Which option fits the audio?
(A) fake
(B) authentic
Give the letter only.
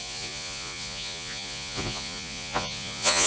A